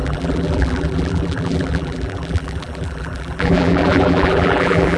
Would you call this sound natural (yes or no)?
no